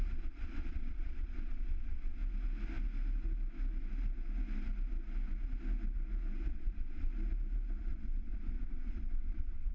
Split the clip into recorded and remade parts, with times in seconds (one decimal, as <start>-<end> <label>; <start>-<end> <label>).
0.0-2.2 remade; 2.2-6.5 recorded; 6.5-7.1 remade; 7.1-7.8 recorded; 7.8-9.7 remade